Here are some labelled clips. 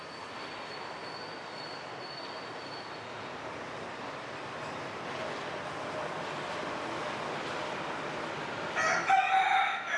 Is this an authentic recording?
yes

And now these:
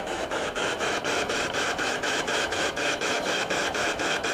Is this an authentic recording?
no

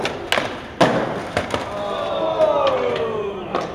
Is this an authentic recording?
yes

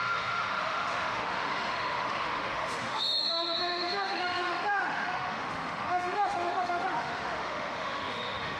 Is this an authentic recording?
no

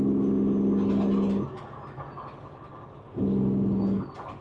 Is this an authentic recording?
yes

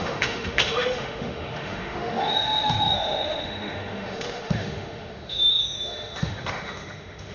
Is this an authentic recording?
no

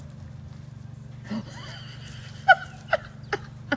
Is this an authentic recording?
yes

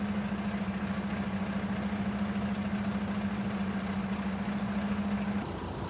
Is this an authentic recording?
yes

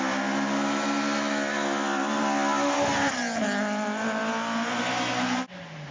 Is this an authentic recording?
yes